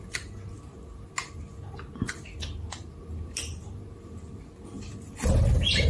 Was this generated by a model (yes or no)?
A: no